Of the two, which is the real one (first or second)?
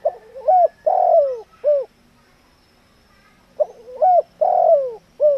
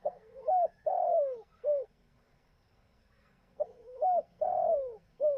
first